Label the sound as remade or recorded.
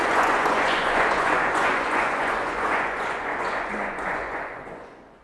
remade